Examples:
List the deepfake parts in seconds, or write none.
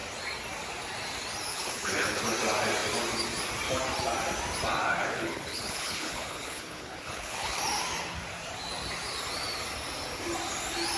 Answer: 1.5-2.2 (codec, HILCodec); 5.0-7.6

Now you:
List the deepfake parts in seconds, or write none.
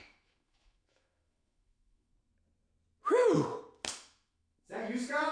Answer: 0.0-2.1 (autoencoder, DAC-VAE); 3.9-5.3